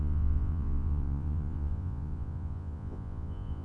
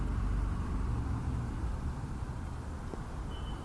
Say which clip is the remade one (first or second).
first